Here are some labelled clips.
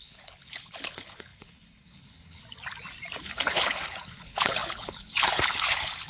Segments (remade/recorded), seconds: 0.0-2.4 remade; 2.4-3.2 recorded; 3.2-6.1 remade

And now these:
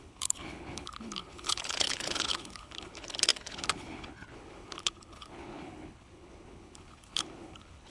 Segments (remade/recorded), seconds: 0.0-7.9 remade

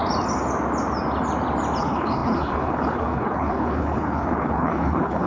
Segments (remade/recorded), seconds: 0.0-1.8 recorded; 1.8-5.3 remade

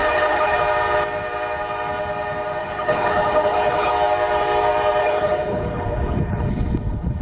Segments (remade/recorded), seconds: 0.0-0.6 remade; 0.6-2.6 recorded; 2.6-3.9 remade; 3.9-5.0 recorded; 5.0-7.2 remade